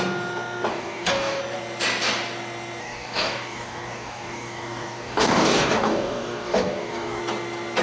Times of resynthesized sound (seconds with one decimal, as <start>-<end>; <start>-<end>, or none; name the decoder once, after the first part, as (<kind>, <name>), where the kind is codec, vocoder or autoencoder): 0.7-1.4 (codec, DAC); 2.8-7.2